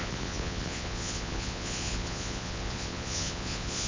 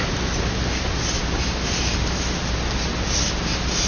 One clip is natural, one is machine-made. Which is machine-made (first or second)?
first